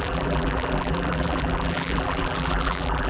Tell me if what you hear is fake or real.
fake